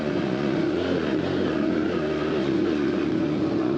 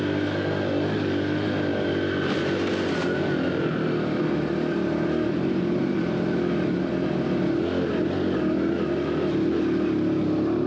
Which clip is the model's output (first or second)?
first